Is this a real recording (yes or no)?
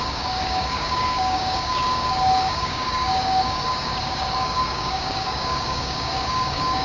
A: no